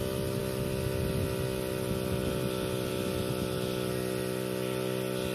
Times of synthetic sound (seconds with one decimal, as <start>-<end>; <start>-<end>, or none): none